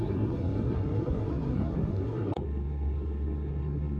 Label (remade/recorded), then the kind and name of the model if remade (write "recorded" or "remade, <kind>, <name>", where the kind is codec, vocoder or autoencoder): remade, codec, SNAC